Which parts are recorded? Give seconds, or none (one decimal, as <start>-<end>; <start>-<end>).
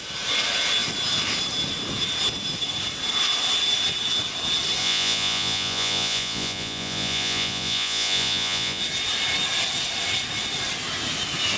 0.0-4.8; 8.8-11.6